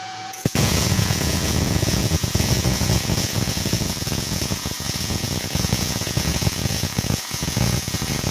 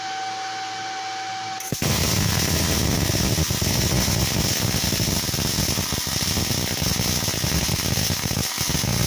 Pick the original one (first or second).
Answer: second